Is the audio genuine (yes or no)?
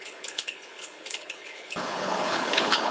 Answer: no